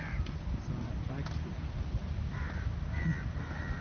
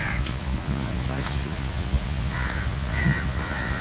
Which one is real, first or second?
first